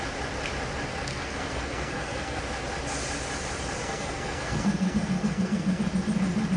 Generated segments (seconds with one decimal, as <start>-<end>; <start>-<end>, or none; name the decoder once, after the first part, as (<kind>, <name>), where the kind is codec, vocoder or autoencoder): 1.1-2.4 (codec, SNAC); 3.8-5.8